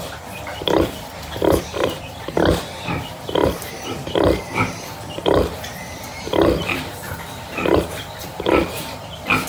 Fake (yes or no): yes